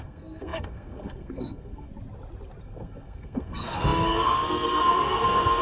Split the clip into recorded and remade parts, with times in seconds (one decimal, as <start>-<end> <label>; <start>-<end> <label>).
0.0-1.9 remade; 1.9-2.6 recorded; 2.6-5.6 remade